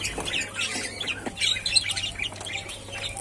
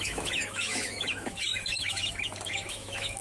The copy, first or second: second